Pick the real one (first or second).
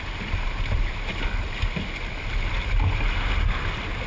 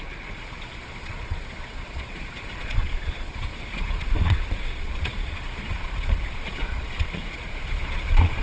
first